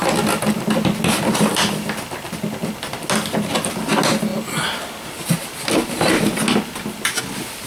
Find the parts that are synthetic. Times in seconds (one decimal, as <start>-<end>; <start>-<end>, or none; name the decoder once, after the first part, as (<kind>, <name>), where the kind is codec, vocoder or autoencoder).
none